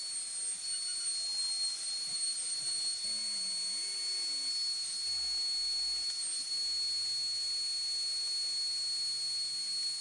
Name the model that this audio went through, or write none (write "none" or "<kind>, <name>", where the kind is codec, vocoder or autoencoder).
none